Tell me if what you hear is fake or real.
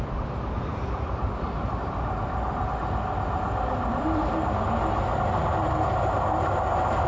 real